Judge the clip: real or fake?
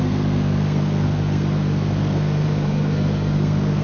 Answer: fake